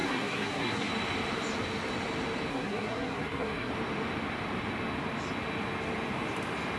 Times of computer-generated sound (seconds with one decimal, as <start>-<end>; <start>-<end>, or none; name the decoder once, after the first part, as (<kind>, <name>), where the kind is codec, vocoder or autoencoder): 0.0-0.9 (codec, SNAC); 2.5-3.7